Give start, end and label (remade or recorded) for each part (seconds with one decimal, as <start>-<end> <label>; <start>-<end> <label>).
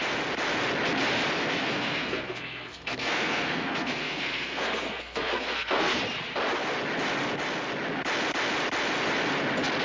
0.0-1.4 recorded; 1.4-6.0 remade; 6.0-9.8 recorded